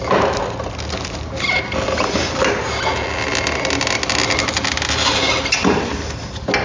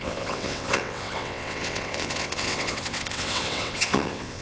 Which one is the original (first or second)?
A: first